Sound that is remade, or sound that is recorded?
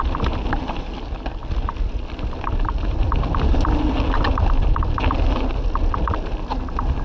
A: recorded